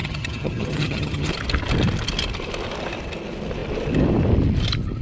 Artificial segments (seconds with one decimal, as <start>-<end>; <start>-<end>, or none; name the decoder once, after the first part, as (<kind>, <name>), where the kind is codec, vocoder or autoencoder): 0.0-1.3 (vocoder, HiFi-GAN)